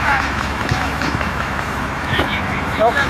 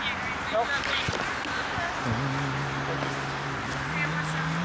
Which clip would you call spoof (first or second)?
first